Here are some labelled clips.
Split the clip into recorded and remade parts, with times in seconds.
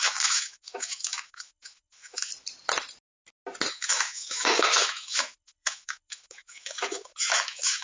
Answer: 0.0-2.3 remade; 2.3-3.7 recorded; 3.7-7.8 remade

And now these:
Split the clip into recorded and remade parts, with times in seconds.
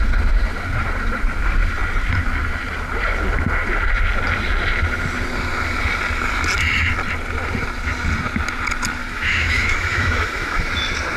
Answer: 0.0-9.0 recorded; 9.0-10.7 remade; 10.7-11.2 recorded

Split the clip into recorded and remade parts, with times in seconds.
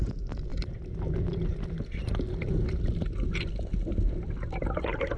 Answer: 0.0-5.2 recorded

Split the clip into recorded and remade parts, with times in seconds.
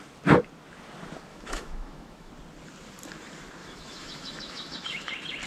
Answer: 0.0-1.3 recorded; 1.3-2.3 remade; 2.3-3.6 recorded; 3.6-5.1 remade; 5.1-5.5 recorded